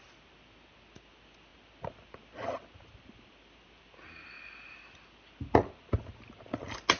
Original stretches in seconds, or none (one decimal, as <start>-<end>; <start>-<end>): 0.0-7.0